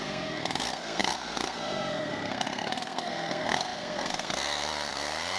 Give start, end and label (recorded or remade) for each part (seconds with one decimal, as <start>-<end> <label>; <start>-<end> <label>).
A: 0.0-5.4 remade